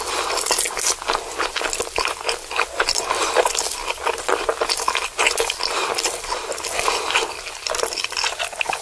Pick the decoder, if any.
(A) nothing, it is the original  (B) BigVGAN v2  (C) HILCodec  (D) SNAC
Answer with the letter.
A